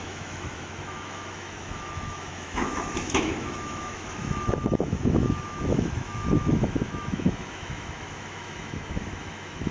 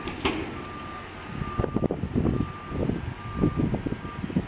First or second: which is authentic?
second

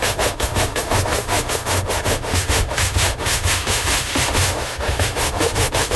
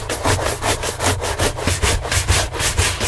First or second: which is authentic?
second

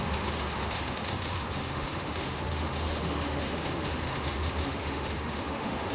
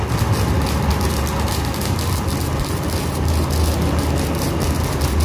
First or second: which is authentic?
second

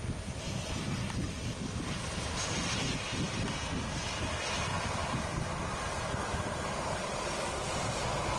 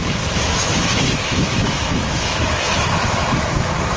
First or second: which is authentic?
first